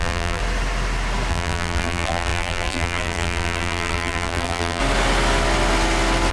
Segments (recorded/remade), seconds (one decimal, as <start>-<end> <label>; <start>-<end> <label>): 0.0-0.4 remade; 0.4-1.3 recorded; 1.3-4.8 remade; 4.8-6.3 recorded